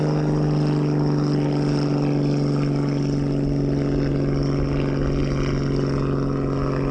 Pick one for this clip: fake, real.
real